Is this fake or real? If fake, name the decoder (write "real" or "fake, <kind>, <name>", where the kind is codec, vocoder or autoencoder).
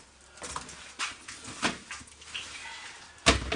real